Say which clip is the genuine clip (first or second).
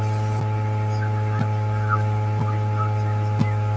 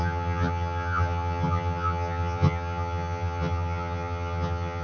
first